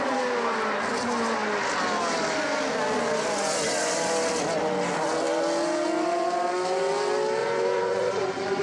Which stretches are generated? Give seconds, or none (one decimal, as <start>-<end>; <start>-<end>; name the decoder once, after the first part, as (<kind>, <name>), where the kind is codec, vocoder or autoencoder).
7.4-8.6 (vocoder, Vocos)